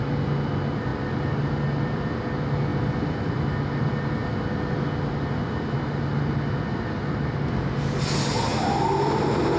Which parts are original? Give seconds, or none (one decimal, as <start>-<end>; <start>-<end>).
0.0-2.7; 3.3-4.2; 4.9-8.5